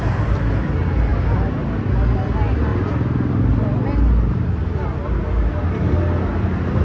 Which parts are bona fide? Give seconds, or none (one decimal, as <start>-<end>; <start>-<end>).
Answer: 0.0-6.8